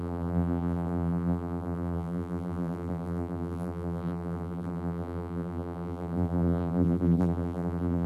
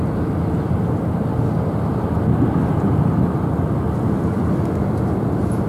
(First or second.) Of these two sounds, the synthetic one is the first